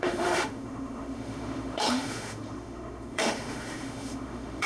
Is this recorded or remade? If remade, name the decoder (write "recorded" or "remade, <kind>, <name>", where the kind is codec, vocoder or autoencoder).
remade, autoencoder, DAC-VAE